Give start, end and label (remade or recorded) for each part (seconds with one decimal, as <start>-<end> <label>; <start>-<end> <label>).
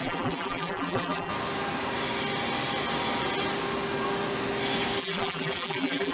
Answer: 0.0-1.3 remade; 1.3-5.0 recorded; 5.0-6.1 remade